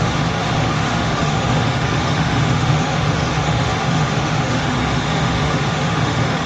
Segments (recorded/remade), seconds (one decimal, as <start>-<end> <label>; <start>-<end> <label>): 0.0-6.5 remade